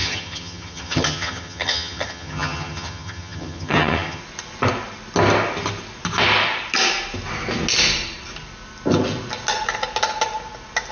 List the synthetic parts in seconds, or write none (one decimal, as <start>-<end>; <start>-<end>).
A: 0.0-4.2